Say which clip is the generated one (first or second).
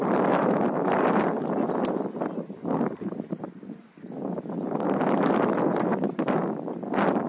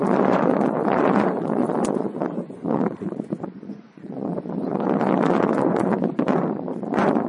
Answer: second